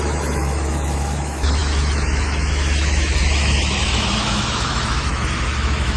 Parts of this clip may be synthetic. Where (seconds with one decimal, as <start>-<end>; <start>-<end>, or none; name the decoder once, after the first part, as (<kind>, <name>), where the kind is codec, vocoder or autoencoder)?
0.0-6.0 (autoencoder, DAC-VAE)